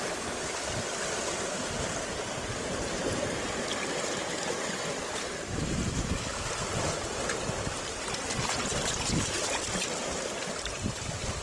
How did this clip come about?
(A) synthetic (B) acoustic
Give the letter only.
A